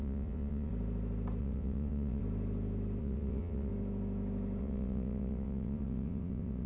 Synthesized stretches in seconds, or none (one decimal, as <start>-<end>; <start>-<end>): 0.0-0.7; 1.4-2.2; 3.0-3.7; 4.6-6.7